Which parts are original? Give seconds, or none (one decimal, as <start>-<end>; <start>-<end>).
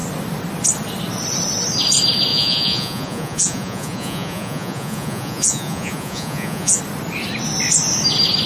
0.0-2.3; 6.8-8.5